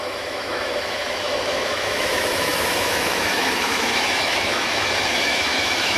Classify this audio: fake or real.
fake